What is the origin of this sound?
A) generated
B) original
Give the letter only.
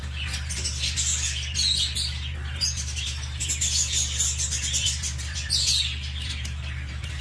B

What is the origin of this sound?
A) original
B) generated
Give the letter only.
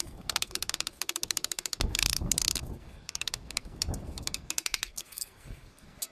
B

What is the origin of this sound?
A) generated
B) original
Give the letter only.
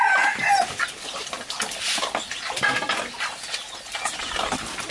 B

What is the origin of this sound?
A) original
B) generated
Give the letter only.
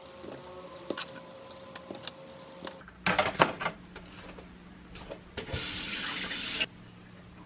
A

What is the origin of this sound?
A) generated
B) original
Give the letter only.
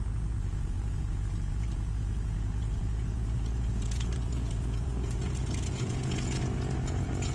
A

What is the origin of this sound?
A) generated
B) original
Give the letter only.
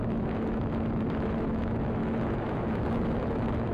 A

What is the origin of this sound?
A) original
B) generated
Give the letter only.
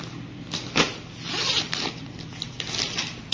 A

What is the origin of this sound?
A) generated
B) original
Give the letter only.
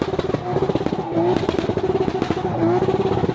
B